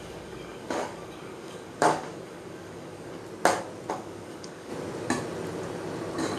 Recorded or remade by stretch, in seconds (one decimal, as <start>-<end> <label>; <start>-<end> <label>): 0.0-3.2 remade; 3.2-3.9 recorded; 3.9-4.7 remade; 4.7-6.4 recorded